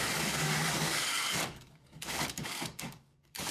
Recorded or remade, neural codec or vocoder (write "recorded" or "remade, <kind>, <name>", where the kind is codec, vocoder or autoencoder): remade, codec, DAC